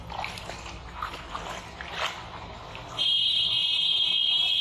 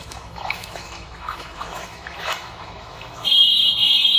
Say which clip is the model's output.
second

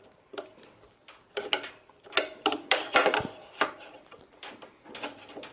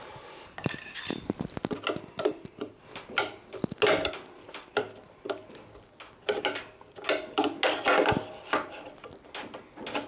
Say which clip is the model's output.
first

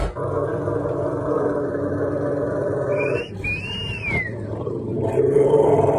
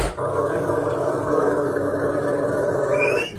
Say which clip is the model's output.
second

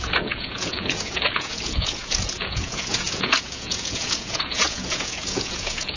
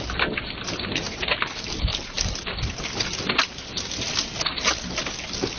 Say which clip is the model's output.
first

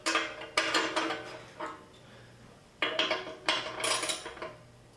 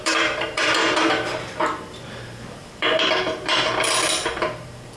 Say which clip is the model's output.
second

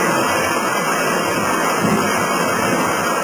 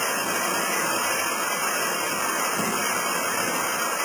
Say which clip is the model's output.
second